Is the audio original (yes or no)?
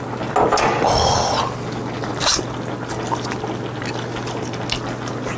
yes